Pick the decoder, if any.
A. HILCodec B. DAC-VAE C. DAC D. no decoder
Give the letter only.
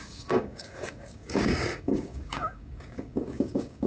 C